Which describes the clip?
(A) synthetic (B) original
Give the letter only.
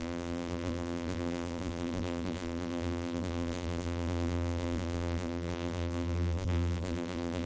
A